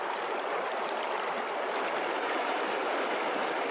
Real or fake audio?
real